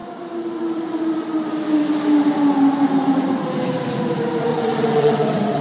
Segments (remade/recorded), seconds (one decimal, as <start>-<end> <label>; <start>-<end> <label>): 0.0-4.5 recorded; 4.5-5.6 remade